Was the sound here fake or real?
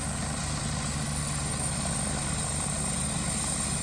real